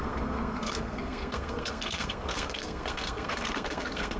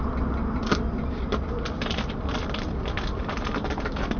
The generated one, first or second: first